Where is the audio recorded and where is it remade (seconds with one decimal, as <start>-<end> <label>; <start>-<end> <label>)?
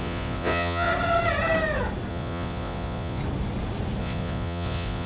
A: 0.0-0.9 remade; 0.9-2.1 recorded; 2.1-3.2 remade; 3.2-4.0 recorded; 4.0-5.1 remade